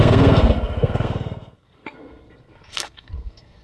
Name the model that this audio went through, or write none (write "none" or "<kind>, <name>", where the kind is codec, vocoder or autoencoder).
codec, SNAC